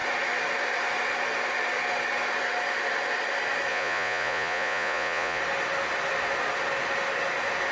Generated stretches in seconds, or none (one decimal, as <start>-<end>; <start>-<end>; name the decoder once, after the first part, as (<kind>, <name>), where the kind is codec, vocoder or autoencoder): 3.7-5.4 (vocoder, Vocos)